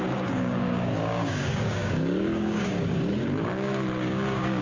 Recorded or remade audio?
remade